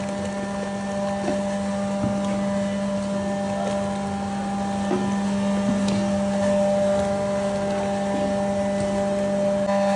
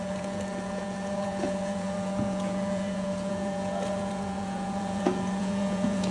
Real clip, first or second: first